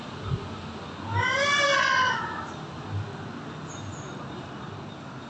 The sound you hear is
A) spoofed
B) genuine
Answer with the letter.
B